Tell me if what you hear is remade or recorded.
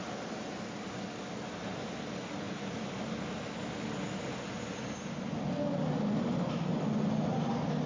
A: recorded